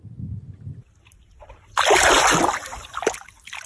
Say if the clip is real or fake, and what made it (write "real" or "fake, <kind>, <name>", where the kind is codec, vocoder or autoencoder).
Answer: real